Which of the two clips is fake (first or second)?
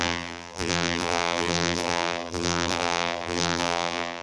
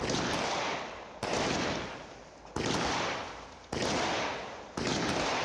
first